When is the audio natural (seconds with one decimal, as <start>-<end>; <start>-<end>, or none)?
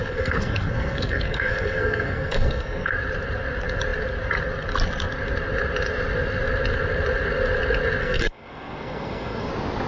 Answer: 2.9-8.0; 9.5-9.9